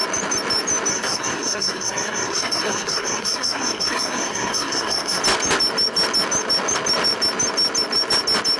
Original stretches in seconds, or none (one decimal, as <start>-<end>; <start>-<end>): 0.0-0.9; 5.2-8.6